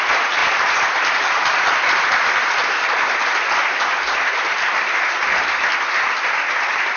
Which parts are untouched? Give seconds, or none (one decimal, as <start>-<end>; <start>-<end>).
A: 0.0-7.0